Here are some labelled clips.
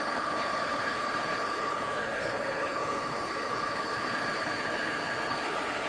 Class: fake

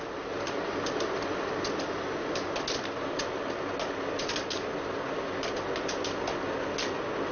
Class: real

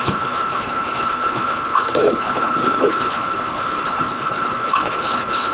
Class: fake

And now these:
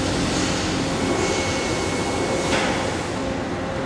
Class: real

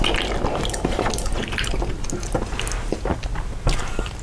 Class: real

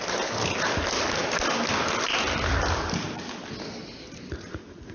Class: real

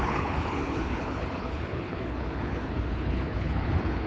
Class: fake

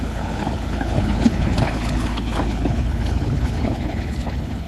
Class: fake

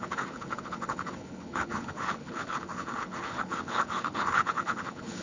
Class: fake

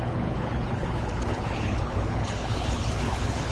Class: fake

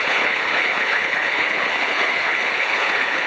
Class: fake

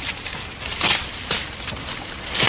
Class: real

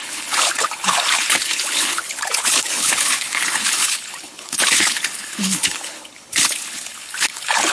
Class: fake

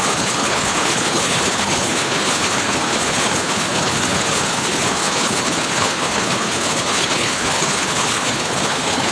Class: fake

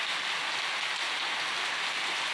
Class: real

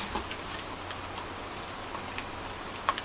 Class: real